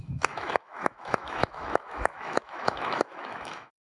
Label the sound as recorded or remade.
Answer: remade